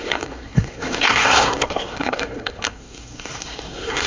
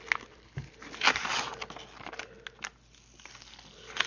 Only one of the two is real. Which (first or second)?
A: second